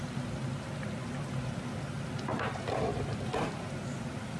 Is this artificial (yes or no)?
no